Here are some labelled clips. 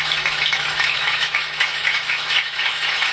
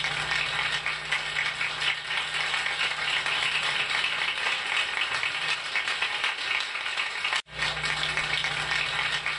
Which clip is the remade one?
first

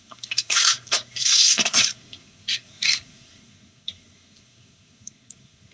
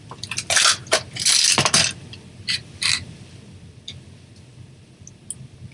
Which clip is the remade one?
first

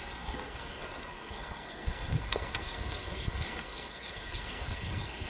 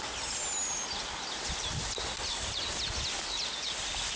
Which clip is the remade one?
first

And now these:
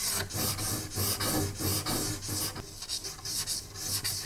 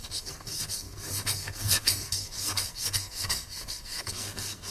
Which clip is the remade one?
second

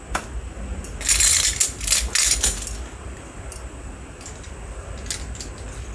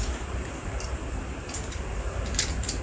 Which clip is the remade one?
second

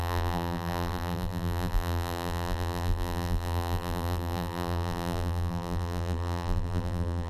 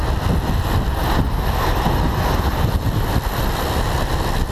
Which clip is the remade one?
first